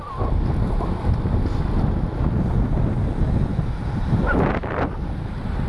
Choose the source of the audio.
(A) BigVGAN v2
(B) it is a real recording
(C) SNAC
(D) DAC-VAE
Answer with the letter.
B